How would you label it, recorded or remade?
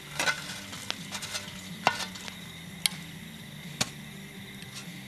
recorded